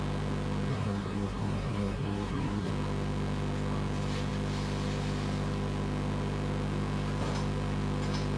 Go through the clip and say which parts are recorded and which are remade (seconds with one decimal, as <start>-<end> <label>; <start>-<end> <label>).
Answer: 0.0-0.7 recorded; 0.7-2.7 remade; 2.7-8.4 recorded